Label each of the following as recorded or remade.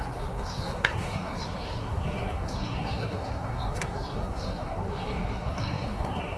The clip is remade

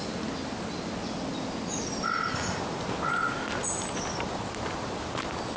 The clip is recorded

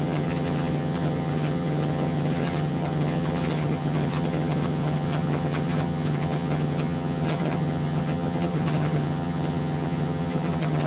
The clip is remade